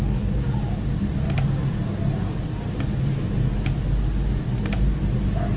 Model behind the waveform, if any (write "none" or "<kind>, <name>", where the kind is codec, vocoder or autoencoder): none